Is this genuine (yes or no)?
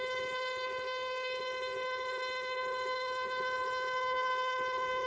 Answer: no